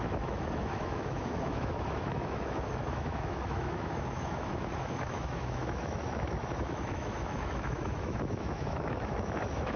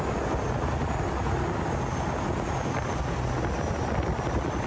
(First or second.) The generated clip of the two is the first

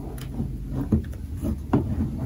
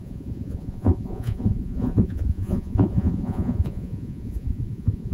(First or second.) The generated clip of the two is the second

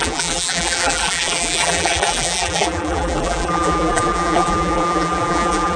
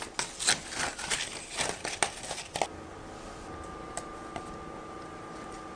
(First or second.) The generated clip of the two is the first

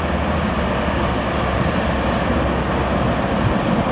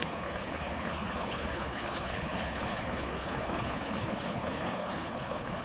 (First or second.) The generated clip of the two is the second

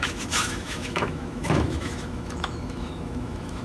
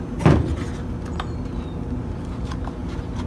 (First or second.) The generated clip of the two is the first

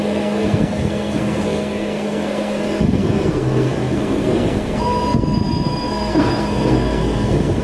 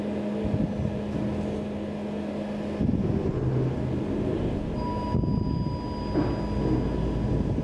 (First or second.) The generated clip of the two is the first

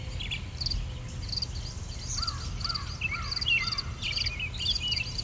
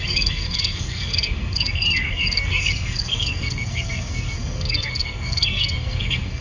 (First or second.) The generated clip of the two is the second